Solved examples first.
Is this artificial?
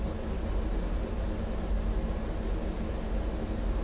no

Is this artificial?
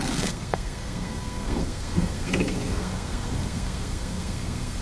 yes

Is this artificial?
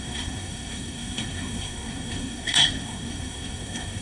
yes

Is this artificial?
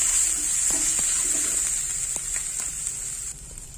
no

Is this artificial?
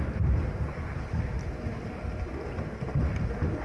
no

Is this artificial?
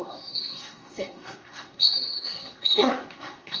yes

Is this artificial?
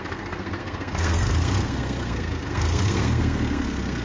yes